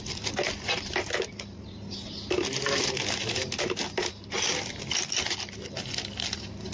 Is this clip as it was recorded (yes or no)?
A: yes